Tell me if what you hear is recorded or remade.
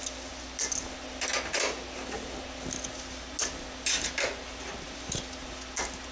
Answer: recorded